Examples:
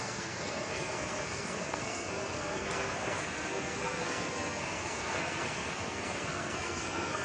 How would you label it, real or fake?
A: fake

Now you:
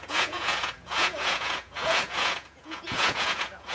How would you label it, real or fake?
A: fake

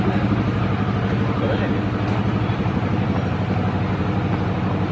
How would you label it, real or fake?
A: real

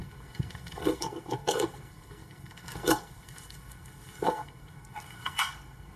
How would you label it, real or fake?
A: fake